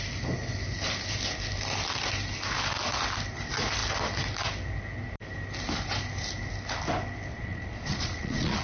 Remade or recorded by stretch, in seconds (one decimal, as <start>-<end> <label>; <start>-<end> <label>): 0.0-7.3 recorded; 7.3-8.6 remade